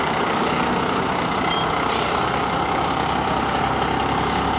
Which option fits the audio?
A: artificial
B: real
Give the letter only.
B